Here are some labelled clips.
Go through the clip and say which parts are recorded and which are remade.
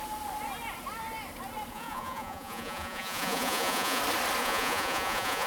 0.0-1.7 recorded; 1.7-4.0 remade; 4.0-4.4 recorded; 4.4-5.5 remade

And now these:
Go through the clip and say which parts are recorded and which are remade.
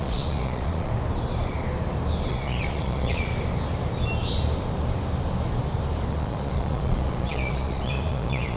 0.0-0.9 remade; 0.9-2.3 recorded; 2.3-3.3 remade; 3.3-6.1 recorded; 6.1-8.6 remade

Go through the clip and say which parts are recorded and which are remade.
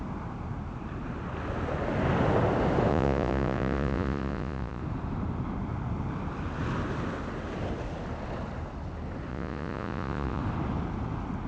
0.0-2.9 recorded; 2.9-4.8 remade; 4.8-9.3 recorded; 9.3-10.4 remade; 10.4-11.5 recorded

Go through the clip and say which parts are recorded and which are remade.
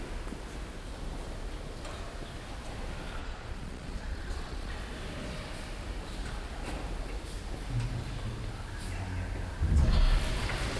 0.0-3.2 recorded; 3.2-4.7 remade; 4.7-10.8 recorded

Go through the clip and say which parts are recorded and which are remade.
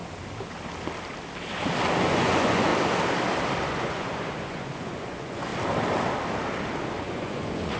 0.0-2.0 recorded; 2.0-2.7 remade; 2.7-3.7 recorded; 3.7-5.5 remade; 5.5-7.0 recorded; 7.0-7.8 remade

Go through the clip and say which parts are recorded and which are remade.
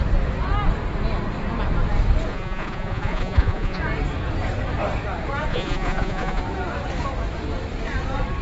0.0-2.3 recorded; 2.3-3.8 remade; 3.8-5.5 recorded; 5.5-6.4 remade; 6.4-8.4 recorded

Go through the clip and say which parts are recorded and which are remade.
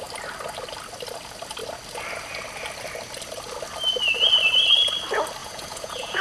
0.0-5.4 recorded; 5.4-6.2 remade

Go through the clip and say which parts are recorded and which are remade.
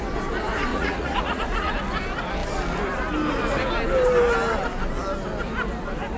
0.0-0.7 recorded; 0.7-1.7 remade; 1.7-6.2 recorded